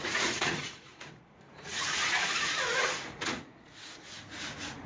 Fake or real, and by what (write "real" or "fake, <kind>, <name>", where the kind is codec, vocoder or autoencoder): fake, vocoder, Vocos